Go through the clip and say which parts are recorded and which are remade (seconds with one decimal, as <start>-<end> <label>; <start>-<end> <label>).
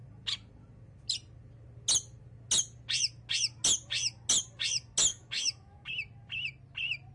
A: 0.0-5.1 recorded; 5.1-5.9 remade; 5.9-7.1 recorded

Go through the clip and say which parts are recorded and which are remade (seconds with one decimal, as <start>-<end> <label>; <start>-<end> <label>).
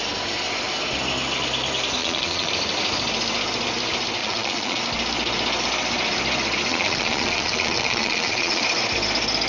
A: 0.0-2.0 recorded; 2.0-2.5 remade; 2.5-4.2 recorded; 4.2-4.8 remade; 4.8-6.7 recorded; 6.7-8.6 remade; 8.6-9.5 recorded